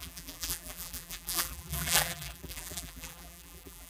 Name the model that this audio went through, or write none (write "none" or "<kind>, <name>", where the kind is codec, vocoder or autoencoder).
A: vocoder, BigVGAN v2